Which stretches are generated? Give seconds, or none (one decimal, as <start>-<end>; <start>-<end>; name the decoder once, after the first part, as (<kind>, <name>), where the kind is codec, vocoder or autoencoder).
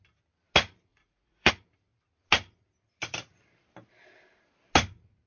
0.9-1.5 (vocoder, Vocos)